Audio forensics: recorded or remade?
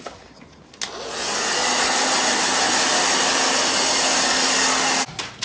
recorded